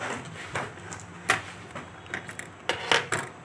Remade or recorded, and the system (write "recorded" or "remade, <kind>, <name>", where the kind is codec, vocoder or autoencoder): recorded